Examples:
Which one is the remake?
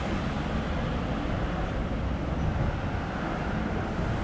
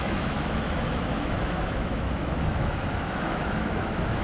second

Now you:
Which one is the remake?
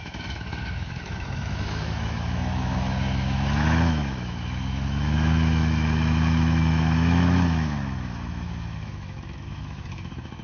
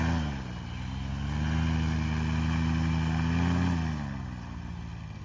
first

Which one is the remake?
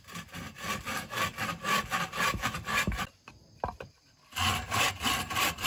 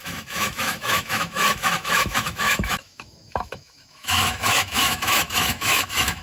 second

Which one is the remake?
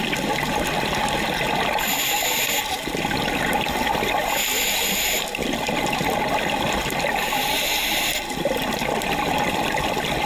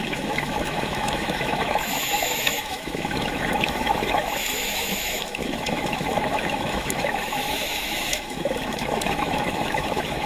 second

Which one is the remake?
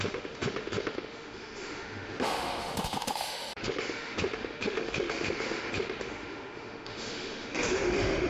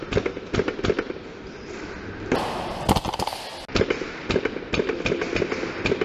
first